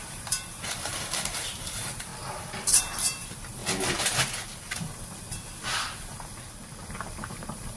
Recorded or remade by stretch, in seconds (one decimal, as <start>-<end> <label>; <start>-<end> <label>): 0.0-2.1 remade; 2.1-2.8 recorded; 2.8-3.6 remade; 3.6-7.3 recorded; 7.3-7.8 remade